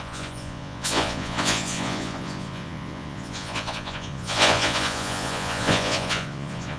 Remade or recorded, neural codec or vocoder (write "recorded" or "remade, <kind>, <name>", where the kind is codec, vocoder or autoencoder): remade, vocoder, Vocos